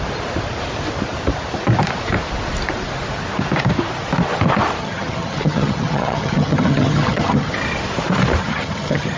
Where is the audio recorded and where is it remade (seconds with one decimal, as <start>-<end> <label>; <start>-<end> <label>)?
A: 0.0-4.8 recorded; 4.8-7.5 remade; 7.5-8.4 recorded; 8.4-9.2 remade